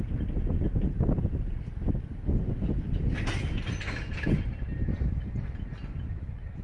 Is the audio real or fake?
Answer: real